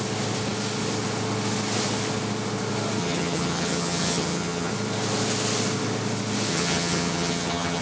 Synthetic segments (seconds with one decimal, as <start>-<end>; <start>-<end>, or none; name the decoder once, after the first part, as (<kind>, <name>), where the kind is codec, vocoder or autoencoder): 3.0-4.7 (vocoder, HiFi-GAN); 6.5-7.8